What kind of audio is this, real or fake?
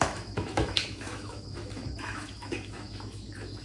fake